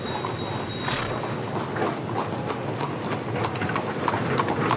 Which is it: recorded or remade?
recorded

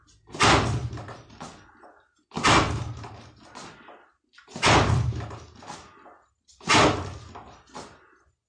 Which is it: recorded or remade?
recorded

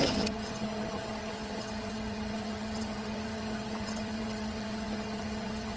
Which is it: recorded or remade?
remade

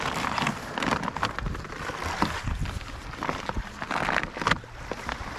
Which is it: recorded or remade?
recorded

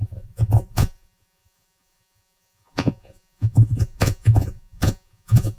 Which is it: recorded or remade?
remade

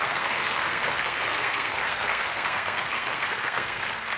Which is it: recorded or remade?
remade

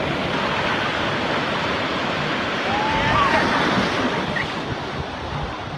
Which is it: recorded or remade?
recorded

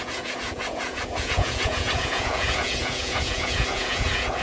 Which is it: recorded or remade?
remade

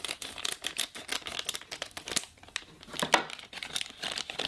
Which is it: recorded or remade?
recorded